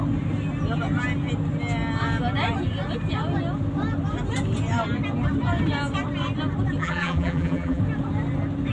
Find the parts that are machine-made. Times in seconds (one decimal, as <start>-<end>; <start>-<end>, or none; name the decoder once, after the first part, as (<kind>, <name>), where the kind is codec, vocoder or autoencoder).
6.8-7.8 (vocoder, BigVGAN v2)